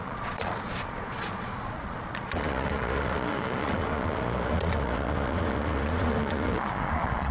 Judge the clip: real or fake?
fake